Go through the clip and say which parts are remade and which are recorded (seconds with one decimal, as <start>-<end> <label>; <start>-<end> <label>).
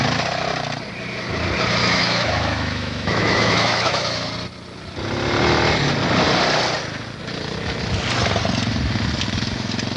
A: 0.0-1.8 recorded; 1.8-4.3 remade; 4.3-10.0 recorded